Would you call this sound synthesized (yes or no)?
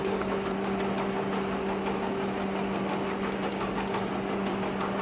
no